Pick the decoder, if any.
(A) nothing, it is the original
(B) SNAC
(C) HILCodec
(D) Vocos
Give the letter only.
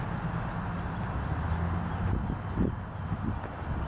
A